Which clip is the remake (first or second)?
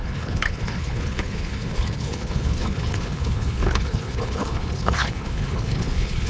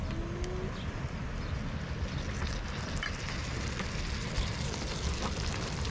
first